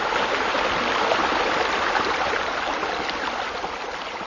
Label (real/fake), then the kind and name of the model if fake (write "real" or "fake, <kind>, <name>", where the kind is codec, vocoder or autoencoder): real